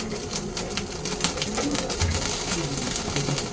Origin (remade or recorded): recorded